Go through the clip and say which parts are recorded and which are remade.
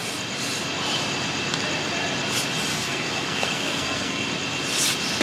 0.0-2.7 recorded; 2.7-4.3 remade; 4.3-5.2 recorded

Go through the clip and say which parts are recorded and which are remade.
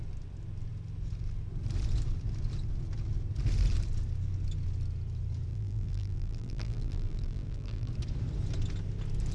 0.0-5.5 recorded; 5.5-7.9 remade; 7.9-9.3 recorded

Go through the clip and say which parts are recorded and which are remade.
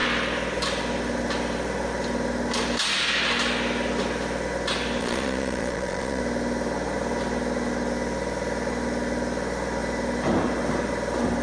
0.0-5.0 recorded; 5.0-6.2 remade; 6.2-11.4 recorded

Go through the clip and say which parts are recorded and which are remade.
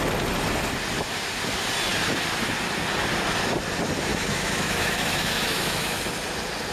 0.0-4.1 recorded; 4.1-6.0 remade; 6.0-6.7 recorded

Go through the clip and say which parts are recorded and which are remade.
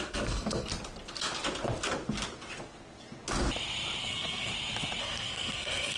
0.0-0.7 remade; 0.7-4.0 recorded; 4.0-4.5 remade; 4.5-5.0 recorded; 5.0-6.0 remade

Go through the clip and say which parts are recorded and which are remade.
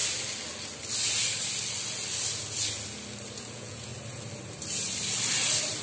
0.0-3.5 recorded; 3.5-3.9 remade; 3.9-5.8 recorded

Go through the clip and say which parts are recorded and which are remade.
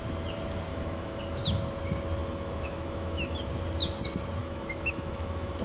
0.0-0.7 recorded; 0.7-1.2 remade; 1.2-2.2 recorded; 2.2-3.5 remade; 3.5-4.4 recorded; 4.4-5.6 remade